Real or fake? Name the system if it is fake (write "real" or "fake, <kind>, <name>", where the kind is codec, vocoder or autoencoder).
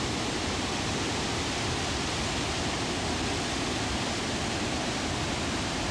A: real